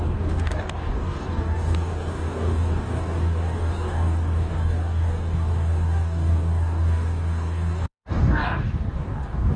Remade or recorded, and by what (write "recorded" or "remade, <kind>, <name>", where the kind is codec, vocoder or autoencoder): remade, codec, DAC